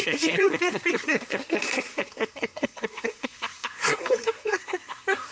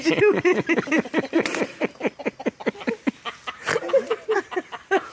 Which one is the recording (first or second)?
second